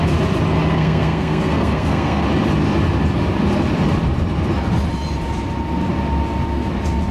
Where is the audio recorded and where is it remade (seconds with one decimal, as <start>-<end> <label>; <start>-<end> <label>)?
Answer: 0.0-0.7 recorded; 0.7-2.2 remade; 2.2-7.1 recorded